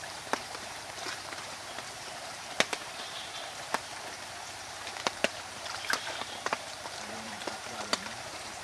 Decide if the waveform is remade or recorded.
remade